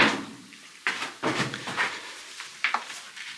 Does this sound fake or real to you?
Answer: fake